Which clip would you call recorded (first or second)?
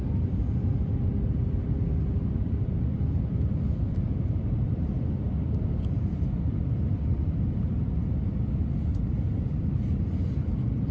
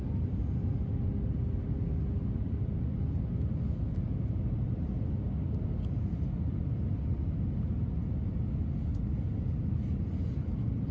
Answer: second